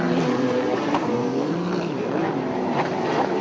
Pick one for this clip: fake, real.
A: real